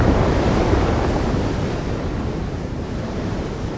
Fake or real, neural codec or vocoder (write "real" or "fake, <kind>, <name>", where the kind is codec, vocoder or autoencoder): fake, vocoder, BigVGAN v2